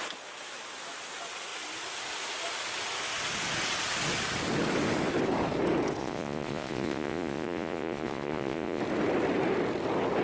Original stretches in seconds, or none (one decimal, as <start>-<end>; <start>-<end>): 0.0-6.0; 8.8-10.2